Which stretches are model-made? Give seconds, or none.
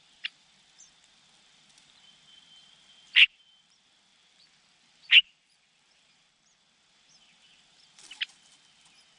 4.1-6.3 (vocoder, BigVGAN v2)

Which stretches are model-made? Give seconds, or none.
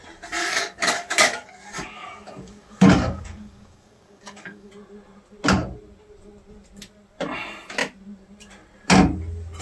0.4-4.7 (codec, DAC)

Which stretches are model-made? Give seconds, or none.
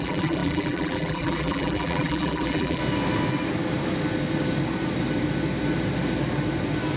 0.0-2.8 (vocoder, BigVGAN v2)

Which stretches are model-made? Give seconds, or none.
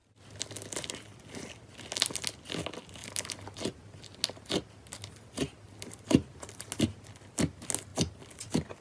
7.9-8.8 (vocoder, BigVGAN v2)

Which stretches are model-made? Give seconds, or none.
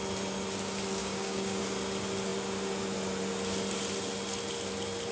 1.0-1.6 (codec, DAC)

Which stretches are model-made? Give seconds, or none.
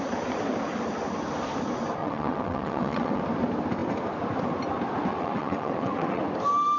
2.0-3.2 (vocoder, WaveNeXt); 5.1-6.2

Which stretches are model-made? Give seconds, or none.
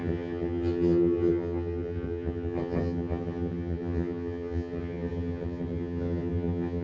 0.0-6.8 (vocoder, HiFi-GAN)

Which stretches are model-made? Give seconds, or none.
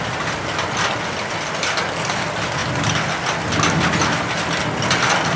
none